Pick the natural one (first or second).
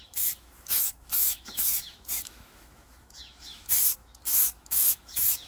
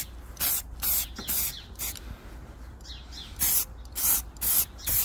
second